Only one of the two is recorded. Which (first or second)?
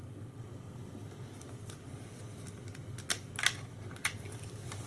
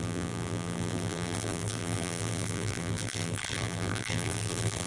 first